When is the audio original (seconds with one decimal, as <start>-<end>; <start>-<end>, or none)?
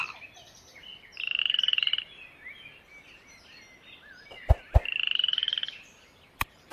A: 0.9-1.4; 2.9-5.8